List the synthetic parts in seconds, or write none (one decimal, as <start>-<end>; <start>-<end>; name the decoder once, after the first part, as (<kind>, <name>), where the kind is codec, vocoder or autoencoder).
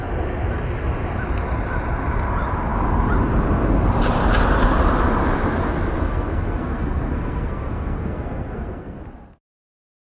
6.0-9.0 (codec, SNAC)